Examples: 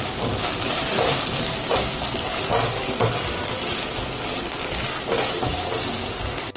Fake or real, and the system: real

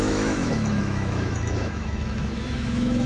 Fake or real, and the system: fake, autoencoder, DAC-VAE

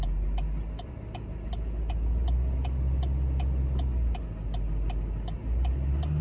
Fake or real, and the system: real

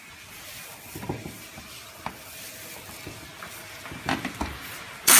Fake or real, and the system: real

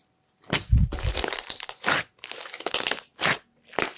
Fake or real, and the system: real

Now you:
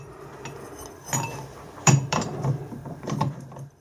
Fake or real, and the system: fake, vocoder, BigVGAN v2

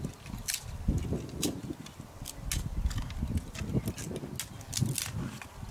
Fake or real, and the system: real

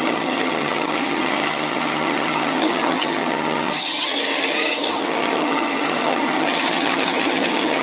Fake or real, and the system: fake, vocoder, HiFi-GAN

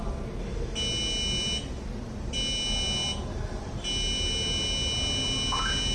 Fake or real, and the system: real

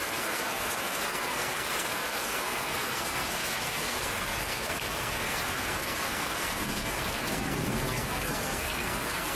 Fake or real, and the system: fake, codec, SNAC